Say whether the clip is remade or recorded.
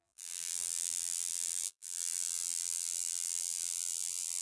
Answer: remade